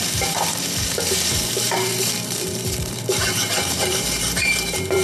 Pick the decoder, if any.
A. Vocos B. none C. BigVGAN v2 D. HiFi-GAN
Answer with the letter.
C